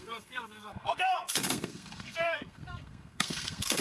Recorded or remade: remade